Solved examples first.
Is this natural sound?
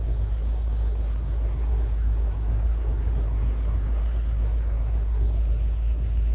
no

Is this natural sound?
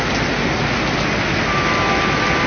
yes